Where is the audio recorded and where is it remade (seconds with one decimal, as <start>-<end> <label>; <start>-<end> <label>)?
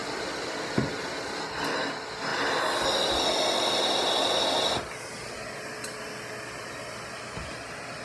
0.0-8.0 recorded